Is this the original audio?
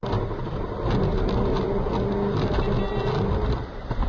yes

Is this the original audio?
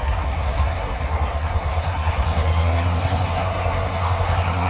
no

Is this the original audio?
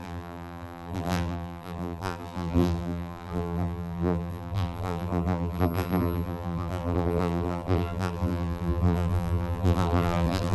no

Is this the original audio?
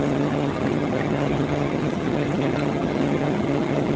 no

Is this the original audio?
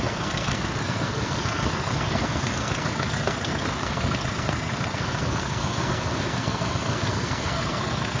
no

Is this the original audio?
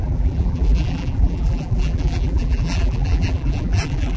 no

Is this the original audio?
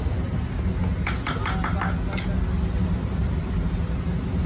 yes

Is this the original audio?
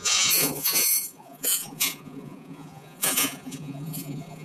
no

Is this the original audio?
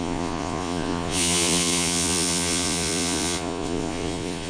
no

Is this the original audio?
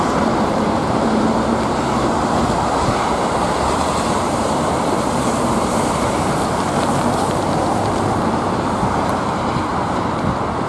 no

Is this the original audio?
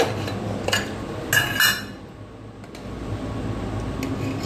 yes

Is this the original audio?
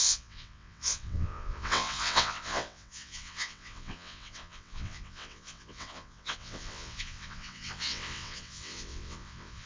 no